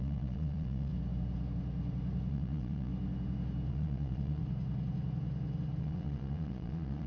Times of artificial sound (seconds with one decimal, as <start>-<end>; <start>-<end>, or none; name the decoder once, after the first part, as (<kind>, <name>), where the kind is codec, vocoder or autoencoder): 0.0-0.9 (vocoder, Vocos); 2.3-2.9; 3.7-4.4; 5.8-7.1